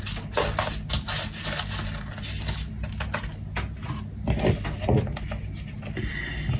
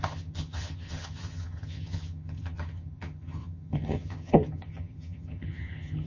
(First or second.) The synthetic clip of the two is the second